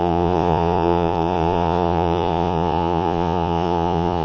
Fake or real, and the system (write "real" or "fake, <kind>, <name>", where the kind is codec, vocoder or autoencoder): fake, vocoder, Vocos